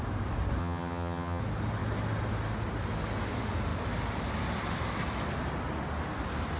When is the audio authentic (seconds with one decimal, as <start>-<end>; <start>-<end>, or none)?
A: 0.0-0.6; 1.4-6.6